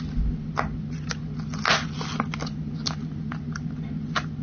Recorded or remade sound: recorded